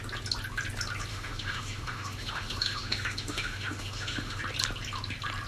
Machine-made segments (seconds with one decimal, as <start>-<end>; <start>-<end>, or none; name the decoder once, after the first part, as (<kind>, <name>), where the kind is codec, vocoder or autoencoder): 1.1-4.4 (autoencoder, DAC-VAE)